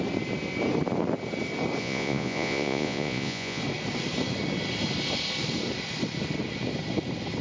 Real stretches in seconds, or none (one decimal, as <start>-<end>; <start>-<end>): 0.0-1.8; 3.6-7.4